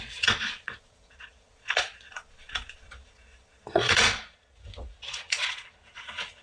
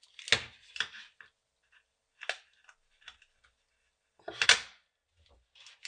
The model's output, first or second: first